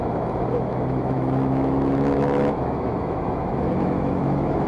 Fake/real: fake